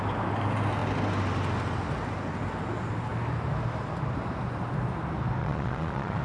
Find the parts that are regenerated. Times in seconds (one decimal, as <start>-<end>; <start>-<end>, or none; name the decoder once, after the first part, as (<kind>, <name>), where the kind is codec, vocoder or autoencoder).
5.4-6.2 (vocoder, Vocos)